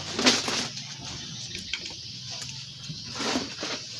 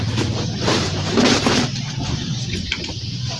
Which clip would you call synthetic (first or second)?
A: second